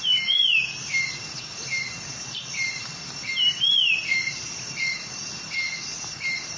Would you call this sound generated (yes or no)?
no